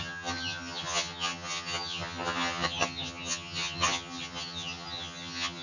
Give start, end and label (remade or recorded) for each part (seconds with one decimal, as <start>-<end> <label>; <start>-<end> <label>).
0.0-5.6 remade